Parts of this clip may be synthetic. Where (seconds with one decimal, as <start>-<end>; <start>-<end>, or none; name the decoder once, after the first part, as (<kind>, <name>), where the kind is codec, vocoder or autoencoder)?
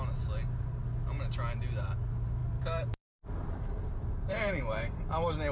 2.4-4.9 (vocoder, BigVGAN v2)